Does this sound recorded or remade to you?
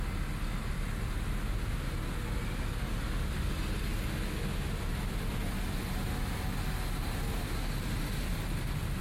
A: recorded